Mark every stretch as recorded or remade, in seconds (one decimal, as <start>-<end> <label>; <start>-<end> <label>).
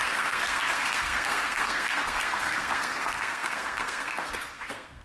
0.0-5.0 remade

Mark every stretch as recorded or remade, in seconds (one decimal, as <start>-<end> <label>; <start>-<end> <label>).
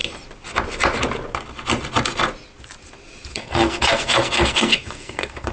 0.0-3.3 recorded; 3.3-5.5 remade